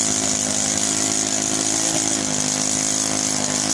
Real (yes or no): yes